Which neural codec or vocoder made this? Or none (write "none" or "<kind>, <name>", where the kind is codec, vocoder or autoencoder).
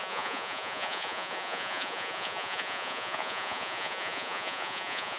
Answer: vocoder, Vocos